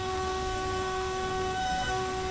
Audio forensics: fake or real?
fake